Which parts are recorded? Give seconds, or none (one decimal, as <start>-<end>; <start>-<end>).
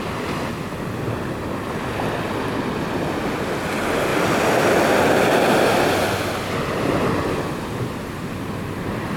0.0-4.1; 4.8-9.2